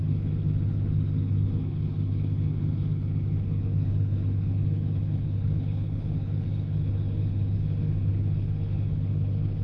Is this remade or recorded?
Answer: remade